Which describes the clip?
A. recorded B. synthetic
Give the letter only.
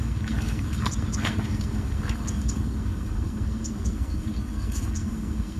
B